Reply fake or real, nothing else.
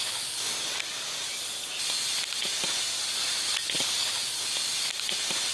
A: real